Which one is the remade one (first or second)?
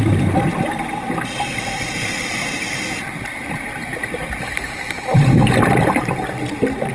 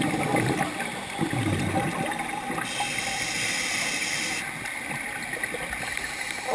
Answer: first